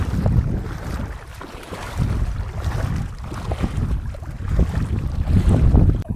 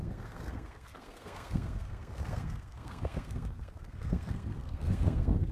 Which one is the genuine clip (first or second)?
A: first